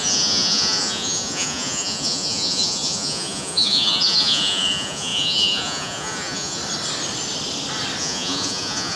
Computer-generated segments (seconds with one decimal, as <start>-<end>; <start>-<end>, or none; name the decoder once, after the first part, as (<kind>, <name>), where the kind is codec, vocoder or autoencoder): 0.0-6.6 (vocoder, Vocos); 8.0-9.0

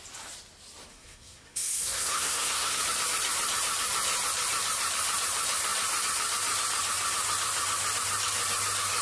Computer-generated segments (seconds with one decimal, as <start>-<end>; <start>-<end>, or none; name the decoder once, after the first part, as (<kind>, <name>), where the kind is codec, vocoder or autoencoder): 0.9-2.8 (codec, SNAC)

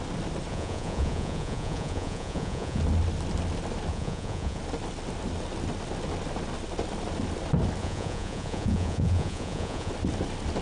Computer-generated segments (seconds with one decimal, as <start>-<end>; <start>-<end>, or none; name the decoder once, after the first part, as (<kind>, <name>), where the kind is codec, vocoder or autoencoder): 0.5-2.8 (vocoder, Vocos); 3.9-4.6; 7.8-9.9